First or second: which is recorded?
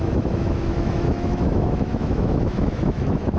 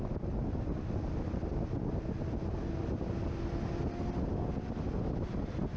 second